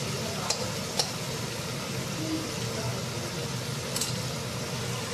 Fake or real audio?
real